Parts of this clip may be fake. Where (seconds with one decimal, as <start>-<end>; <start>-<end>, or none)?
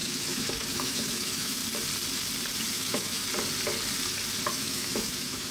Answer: 0.0-1.6; 2.7-3.2; 4.5-5.5